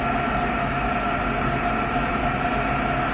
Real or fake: real